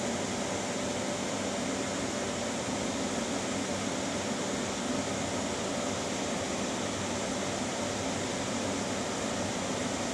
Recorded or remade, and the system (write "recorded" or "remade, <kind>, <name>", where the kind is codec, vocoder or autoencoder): recorded